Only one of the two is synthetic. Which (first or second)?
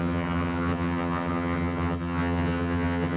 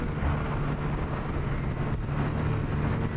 first